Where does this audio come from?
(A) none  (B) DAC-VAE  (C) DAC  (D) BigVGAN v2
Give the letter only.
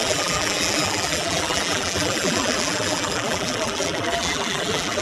D